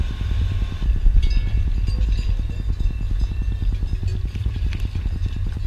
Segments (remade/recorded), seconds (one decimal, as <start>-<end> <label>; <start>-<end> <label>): 0.0-4.1 recorded; 4.1-4.7 remade; 4.7-5.7 recorded